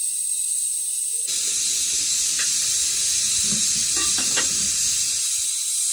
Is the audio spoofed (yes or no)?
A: yes